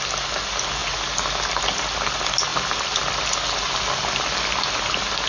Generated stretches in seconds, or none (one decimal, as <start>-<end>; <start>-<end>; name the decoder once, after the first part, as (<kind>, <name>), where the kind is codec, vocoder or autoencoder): none